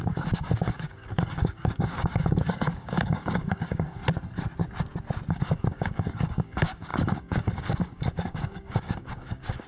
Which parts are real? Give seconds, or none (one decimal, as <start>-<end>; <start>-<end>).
4.0-5.3